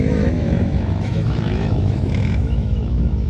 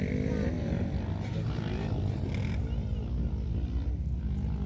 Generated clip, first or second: first